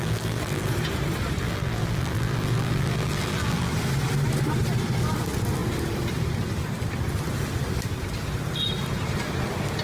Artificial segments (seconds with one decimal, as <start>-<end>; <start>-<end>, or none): 0.0-0.7; 1.4-3.7